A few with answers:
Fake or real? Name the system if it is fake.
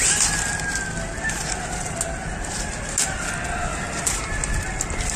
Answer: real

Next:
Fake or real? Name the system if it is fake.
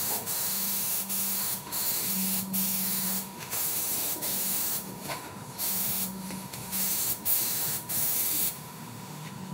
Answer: fake, autoencoder, DAC-VAE